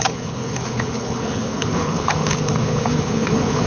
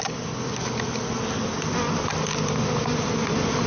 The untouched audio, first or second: second